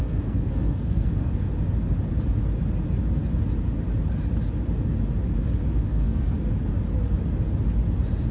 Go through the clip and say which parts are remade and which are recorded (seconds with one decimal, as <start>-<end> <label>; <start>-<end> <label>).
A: 0.0-1.5 remade; 1.5-5.8 recorded; 5.8-6.3 remade; 6.3-8.3 recorded